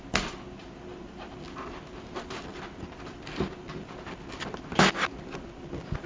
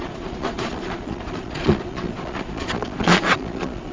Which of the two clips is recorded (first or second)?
first